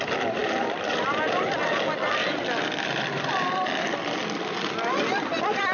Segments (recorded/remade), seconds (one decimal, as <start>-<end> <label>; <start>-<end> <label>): 0.0-0.4 recorded; 0.4-1.0 remade; 1.0-2.2 recorded; 2.2-4.4 remade; 4.4-5.7 recorded